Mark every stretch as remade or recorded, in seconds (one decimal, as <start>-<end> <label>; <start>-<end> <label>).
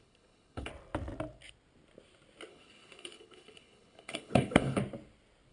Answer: 0.0-0.7 remade; 0.7-2.5 recorded; 2.5-4.8 remade; 4.8-5.5 recorded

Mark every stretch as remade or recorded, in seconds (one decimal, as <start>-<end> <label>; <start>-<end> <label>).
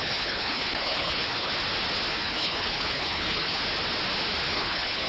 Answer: 0.0-1.5 remade; 1.5-2.1 recorded; 2.1-3.6 remade; 3.6-4.5 recorded; 4.5-5.1 remade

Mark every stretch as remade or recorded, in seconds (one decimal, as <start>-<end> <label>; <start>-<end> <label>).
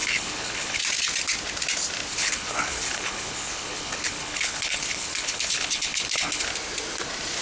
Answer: 0.0-0.8 remade; 0.8-2.1 recorded; 2.1-6.5 remade; 6.5-7.4 recorded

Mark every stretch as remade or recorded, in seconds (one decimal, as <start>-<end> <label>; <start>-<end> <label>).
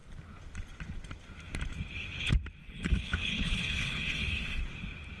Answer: 0.0-2.6 recorded; 2.6-4.6 remade; 4.6-5.2 recorded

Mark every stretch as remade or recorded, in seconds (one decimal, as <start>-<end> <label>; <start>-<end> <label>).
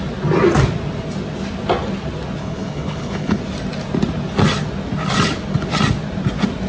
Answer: 0.0-2.4 recorded; 2.4-3.4 remade; 3.4-6.7 recorded